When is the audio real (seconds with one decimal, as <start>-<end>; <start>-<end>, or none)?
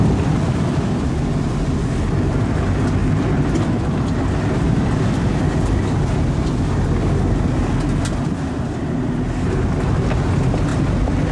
0.0-11.3